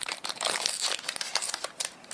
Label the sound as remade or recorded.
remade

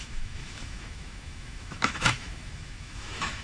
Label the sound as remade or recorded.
remade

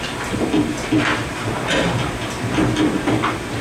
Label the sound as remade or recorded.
recorded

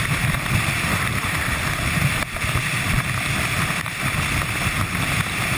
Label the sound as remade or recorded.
remade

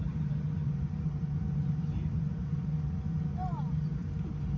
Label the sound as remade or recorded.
remade